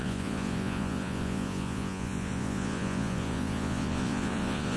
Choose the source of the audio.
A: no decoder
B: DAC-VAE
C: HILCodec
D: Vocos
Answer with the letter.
D